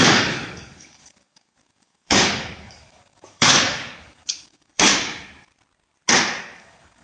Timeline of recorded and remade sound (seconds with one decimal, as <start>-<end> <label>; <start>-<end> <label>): 0.0-4.9 remade; 4.9-6.4 recorded; 6.4-7.0 remade

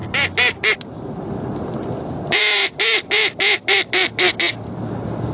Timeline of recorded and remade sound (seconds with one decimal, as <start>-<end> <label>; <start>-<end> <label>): 0.0-5.3 recorded